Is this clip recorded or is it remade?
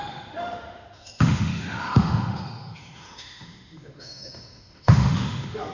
remade